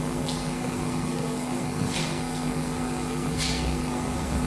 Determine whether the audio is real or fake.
fake